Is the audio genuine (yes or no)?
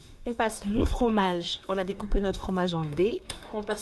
no